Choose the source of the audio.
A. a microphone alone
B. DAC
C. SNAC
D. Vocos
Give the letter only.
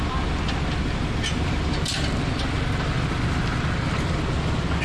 A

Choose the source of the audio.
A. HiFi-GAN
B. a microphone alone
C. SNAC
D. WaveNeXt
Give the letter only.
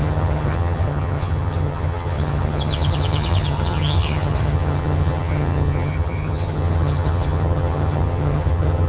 A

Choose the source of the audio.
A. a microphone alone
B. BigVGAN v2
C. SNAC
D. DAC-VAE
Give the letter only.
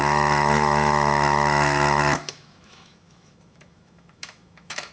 D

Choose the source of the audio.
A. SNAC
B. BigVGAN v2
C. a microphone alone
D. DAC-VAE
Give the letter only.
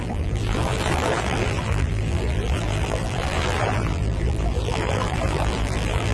B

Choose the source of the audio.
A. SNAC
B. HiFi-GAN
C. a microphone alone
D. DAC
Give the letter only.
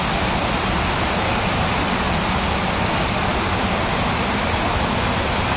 C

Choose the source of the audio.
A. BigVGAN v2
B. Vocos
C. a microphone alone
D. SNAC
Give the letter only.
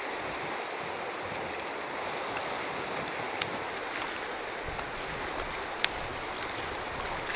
C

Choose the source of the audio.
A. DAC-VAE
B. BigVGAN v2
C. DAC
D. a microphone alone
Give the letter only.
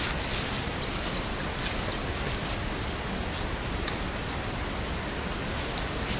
D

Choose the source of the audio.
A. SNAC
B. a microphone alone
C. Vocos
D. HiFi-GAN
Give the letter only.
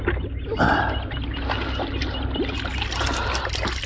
B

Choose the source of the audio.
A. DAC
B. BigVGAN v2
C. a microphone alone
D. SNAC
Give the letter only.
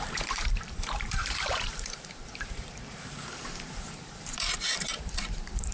B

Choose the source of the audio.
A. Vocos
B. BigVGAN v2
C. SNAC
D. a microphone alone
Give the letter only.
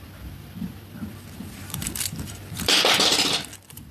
B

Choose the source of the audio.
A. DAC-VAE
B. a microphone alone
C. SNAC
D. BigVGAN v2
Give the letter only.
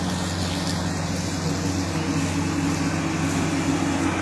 B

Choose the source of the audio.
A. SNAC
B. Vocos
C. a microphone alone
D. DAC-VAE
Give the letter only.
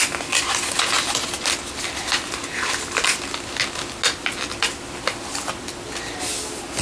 C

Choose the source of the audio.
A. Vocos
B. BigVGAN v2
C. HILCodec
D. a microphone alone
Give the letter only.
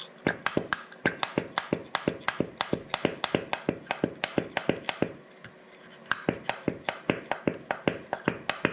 D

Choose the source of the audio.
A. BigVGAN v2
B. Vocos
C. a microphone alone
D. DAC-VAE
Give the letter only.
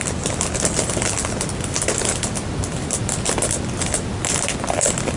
C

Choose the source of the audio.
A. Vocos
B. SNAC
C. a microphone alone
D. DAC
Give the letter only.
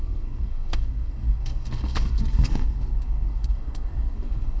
B